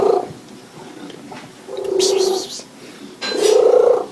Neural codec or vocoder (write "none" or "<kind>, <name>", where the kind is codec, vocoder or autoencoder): none